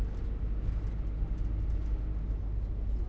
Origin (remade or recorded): recorded